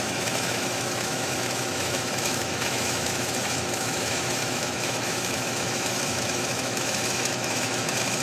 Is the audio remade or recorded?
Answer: remade